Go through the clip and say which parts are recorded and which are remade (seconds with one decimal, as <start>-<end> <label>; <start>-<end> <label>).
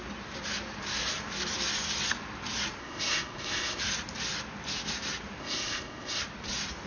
0.0-2.8 recorded; 2.8-3.8 remade; 3.8-5.4 recorded; 5.4-6.2 remade; 6.2-6.9 recorded